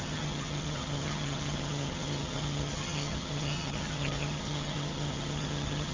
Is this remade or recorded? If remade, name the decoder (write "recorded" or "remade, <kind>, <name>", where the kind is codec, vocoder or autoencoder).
remade, vocoder, HiFi-GAN